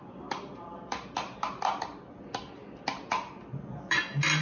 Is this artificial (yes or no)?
no